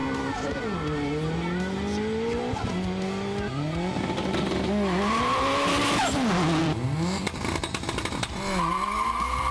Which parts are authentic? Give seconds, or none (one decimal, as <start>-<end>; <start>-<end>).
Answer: 0.0-6.6; 7.6-9.5